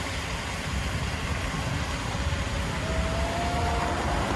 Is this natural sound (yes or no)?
yes